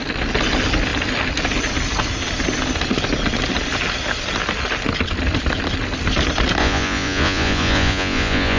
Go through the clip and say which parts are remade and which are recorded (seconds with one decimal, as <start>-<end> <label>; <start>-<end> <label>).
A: 0.0-6.6 recorded; 6.6-8.6 remade